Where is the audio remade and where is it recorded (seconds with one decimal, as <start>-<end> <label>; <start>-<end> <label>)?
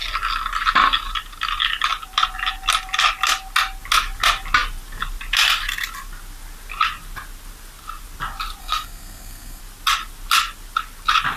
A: 0.0-8.6 recorded; 8.6-9.6 remade; 9.6-11.4 recorded